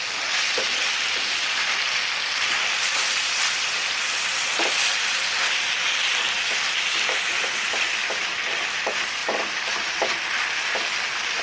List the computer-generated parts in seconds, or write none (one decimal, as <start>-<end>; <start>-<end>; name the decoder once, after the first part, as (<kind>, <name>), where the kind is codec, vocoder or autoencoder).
none